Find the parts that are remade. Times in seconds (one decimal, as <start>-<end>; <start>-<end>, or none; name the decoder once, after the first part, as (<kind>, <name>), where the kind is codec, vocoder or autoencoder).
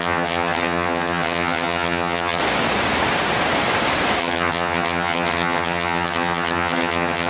0.0-2.4 (vocoder, HiFi-GAN); 4.2-7.3